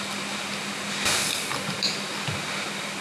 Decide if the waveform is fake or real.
real